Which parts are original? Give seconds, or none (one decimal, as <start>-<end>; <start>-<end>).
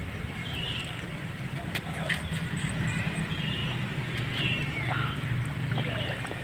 0.8-2.4; 3.6-5.6